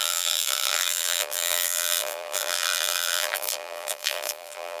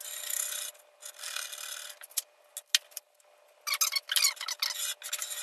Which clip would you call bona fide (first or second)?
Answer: second